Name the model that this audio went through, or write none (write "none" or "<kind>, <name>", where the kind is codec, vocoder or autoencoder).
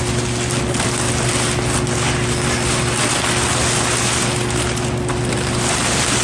none